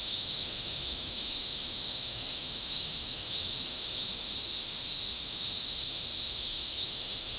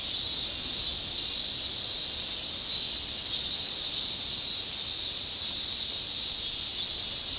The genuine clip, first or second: second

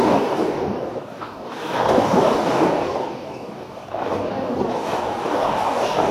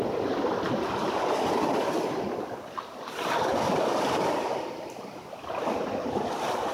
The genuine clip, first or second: second